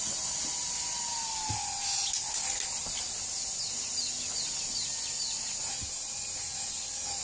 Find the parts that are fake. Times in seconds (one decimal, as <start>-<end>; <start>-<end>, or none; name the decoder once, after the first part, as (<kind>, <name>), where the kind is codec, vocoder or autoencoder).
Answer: none